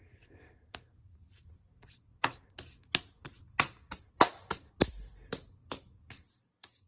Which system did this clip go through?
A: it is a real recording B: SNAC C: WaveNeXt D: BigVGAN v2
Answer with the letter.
A